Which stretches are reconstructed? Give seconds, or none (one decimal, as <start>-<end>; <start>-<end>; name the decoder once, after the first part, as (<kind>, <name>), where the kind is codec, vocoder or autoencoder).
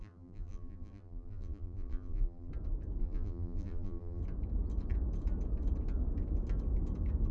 0.0-2.5 (vocoder, BigVGAN v2); 3.0-4.2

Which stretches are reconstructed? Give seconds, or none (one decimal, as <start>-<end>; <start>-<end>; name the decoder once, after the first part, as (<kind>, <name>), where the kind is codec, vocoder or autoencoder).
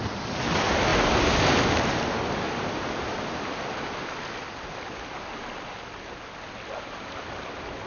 none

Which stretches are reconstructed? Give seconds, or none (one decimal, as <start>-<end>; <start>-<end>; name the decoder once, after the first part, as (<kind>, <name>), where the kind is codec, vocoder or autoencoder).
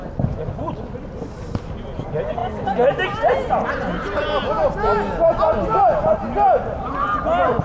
none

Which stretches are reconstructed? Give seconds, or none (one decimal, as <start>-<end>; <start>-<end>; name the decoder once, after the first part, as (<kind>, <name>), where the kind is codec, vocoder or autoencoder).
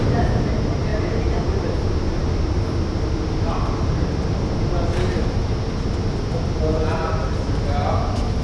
none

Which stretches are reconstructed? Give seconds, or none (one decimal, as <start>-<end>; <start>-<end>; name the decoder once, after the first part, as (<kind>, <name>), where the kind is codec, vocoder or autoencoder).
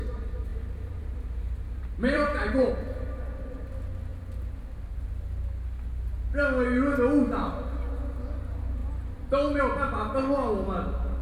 0.5-2.7 (vocoder, BigVGAN v2)